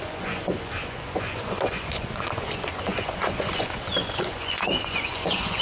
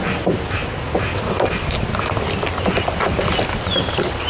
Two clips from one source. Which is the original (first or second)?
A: second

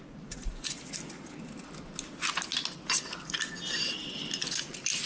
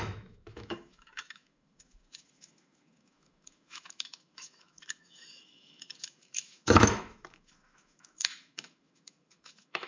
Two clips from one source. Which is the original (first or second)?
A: first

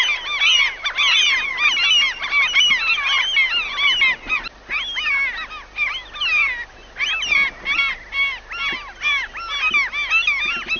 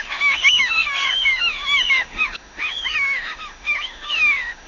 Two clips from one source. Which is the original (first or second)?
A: first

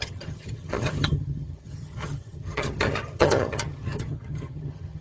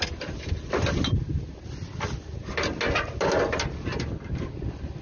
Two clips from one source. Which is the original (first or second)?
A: second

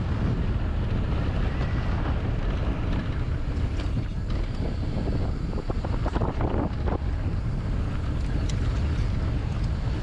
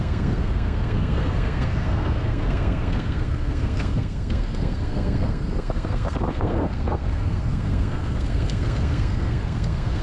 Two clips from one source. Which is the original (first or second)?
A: first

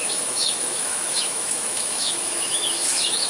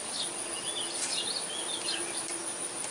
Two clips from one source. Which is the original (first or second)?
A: second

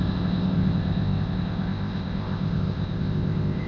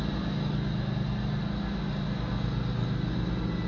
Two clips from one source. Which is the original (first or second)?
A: second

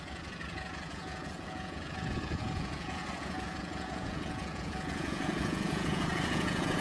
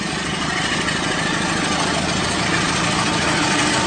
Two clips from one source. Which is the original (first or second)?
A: second